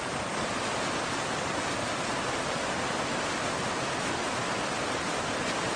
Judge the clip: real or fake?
real